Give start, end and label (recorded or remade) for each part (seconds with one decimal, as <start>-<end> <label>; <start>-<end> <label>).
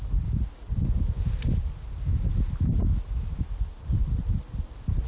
0.0-2.1 recorded; 2.1-2.9 remade; 2.9-5.1 recorded